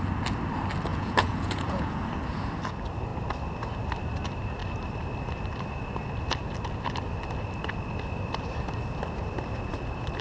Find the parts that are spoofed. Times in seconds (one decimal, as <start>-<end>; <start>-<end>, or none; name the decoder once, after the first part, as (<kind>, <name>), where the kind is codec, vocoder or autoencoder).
0.9-2.0 (vocoder, Vocos)